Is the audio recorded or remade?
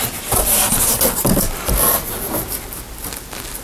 recorded